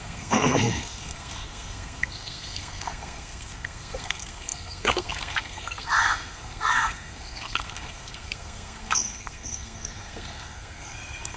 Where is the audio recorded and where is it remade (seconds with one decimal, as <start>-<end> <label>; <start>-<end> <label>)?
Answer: 0.0-11.4 remade

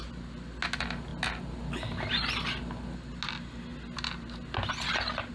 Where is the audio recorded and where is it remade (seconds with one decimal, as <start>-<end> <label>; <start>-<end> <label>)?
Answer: 0.0-5.3 recorded

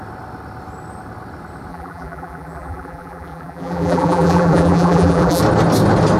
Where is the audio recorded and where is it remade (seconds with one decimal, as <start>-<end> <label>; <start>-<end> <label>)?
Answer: 0.0-1.7 recorded; 1.7-5.4 remade; 5.4-6.2 recorded

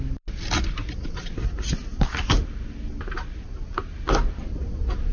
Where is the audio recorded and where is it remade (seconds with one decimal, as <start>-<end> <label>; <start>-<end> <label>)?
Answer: 0.0-5.1 recorded

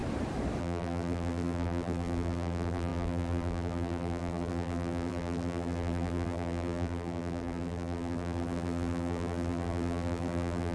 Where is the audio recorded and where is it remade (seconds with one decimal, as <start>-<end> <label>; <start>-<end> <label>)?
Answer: 0.0-0.6 recorded; 0.6-10.7 remade

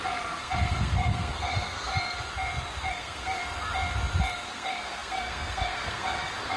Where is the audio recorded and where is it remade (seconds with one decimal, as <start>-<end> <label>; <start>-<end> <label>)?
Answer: 0.0-1.9 remade; 1.9-2.9 recorded; 2.9-3.4 remade; 3.4-4.3 recorded; 4.3-6.6 remade